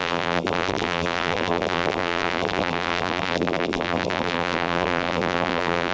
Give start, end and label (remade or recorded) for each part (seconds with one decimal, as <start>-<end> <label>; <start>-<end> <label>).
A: 0.0-5.9 remade